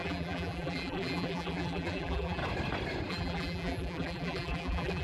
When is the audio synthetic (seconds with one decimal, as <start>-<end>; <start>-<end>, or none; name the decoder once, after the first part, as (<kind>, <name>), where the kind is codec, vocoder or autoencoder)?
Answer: 0.0-2.4 (vocoder, BigVGAN v2); 3.1-5.0